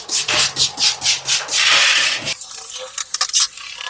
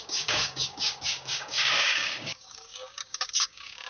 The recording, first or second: first